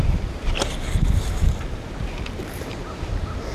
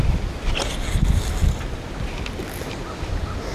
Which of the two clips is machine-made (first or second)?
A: first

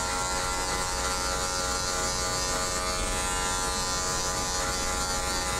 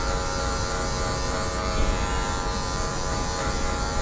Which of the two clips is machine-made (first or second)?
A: second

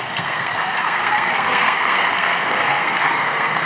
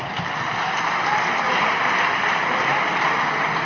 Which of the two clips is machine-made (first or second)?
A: first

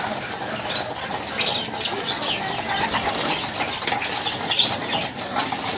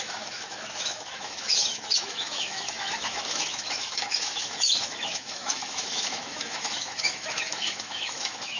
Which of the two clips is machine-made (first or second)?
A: second